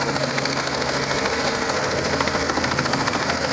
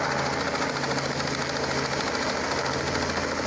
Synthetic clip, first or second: first